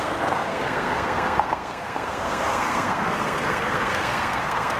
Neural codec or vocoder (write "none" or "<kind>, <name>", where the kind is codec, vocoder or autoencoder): codec, SNAC